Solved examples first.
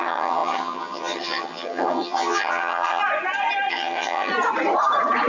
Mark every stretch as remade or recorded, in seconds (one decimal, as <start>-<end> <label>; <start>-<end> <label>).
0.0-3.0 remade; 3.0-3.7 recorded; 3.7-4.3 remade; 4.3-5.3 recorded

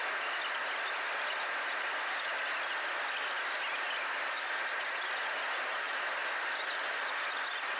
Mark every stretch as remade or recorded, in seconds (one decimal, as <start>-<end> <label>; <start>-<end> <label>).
0.0-7.8 recorded

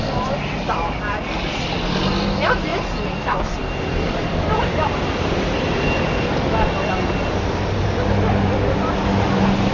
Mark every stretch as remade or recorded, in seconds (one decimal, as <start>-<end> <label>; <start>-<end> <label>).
0.0-9.7 recorded